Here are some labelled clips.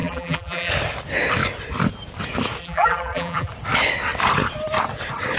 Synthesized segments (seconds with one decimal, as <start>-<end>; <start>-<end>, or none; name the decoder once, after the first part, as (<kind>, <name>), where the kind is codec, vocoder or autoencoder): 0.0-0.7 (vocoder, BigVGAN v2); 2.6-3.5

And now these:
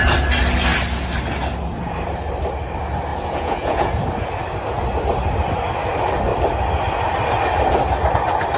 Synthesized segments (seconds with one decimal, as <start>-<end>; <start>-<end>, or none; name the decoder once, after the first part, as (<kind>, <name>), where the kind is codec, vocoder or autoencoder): 3.1-3.9 (vocoder, Vocos)

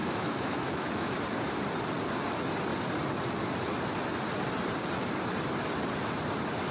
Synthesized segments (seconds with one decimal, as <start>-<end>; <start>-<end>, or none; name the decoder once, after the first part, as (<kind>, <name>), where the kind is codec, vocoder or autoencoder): 0.0-1.2 (autoencoder, DAC-VAE)

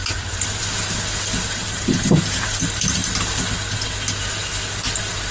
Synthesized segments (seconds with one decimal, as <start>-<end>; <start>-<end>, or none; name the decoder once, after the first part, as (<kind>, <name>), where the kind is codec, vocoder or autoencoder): 1.6-3.1 (vocoder, BigVGAN v2)

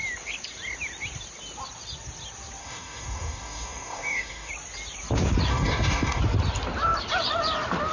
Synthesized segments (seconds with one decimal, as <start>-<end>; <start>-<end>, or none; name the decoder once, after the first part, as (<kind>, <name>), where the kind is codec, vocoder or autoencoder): 2.6-4.5 (codec, DAC); 5.5-6.2